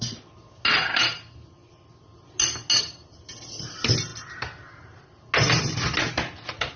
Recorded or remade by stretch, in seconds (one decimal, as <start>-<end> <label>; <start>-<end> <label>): 0.0-6.8 recorded